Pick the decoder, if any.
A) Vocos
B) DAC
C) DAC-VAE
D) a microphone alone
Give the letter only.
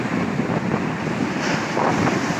D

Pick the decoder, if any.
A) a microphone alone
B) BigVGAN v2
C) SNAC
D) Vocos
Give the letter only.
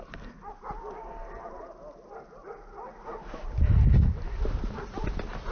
A